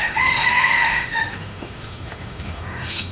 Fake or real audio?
fake